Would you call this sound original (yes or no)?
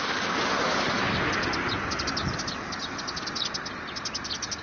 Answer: yes